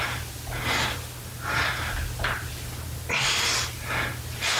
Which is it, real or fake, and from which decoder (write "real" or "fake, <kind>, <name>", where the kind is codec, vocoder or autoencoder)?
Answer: real